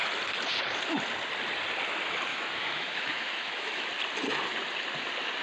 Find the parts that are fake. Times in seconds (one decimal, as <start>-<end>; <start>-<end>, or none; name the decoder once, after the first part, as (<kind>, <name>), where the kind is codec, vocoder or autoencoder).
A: 2.3-3.9 (autoencoder, DAC-VAE)